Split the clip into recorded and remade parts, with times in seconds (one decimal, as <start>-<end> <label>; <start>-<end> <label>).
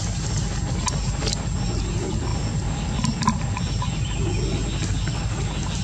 0.0-5.8 recorded